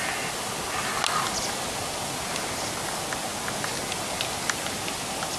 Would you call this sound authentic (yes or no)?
yes